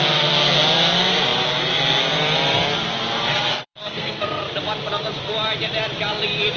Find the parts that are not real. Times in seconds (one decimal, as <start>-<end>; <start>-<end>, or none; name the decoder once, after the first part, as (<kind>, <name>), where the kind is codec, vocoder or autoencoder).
3.5-4.4 (codec, SNAC)